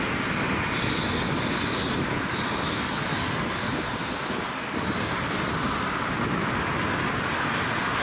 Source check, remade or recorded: recorded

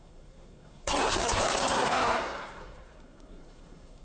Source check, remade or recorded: remade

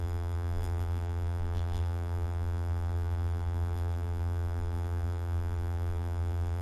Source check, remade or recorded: remade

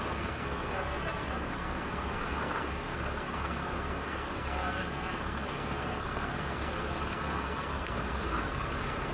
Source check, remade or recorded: remade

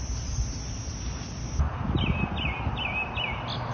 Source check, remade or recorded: recorded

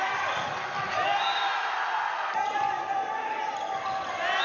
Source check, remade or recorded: recorded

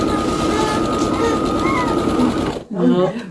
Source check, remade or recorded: remade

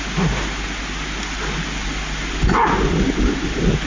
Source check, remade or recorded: recorded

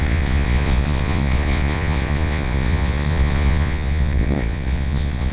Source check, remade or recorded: remade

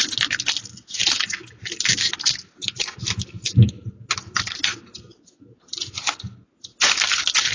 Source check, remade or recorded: recorded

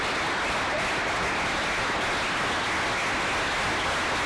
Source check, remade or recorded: recorded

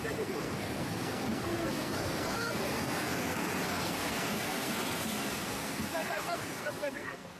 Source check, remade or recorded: remade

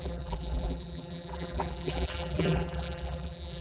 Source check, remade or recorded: remade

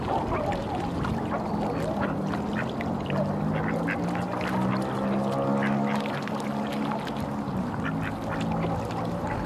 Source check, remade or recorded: recorded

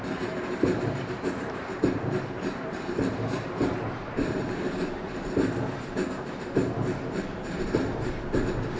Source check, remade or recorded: remade